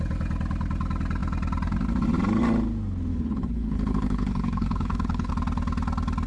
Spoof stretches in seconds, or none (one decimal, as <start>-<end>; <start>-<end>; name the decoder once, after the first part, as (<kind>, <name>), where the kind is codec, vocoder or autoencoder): 3.1-5.3 (codec, HILCodec)